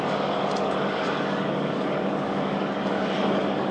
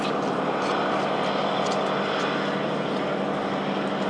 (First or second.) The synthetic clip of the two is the first